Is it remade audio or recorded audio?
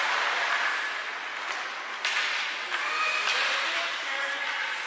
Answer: recorded